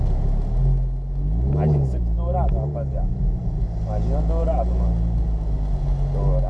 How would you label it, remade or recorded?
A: recorded